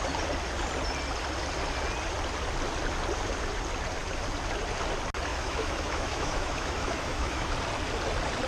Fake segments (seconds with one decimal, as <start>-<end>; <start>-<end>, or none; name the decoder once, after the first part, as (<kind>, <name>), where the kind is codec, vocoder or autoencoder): 5.3-7.5 (autoencoder, DAC-VAE)